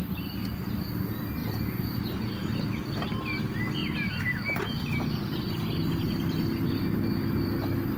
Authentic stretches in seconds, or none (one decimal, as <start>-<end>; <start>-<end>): 0.0-1.4; 2.2-8.0